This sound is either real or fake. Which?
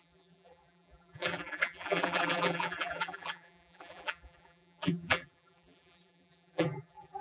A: fake